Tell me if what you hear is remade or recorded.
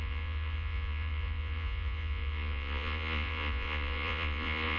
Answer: remade